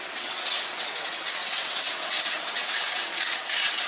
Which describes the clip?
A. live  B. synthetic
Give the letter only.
B